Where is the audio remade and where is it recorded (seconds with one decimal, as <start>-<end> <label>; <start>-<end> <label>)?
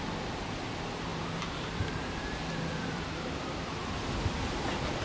0.0-1.1 recorded; 1.1-4.1 remade; 4.1-5.0 recorded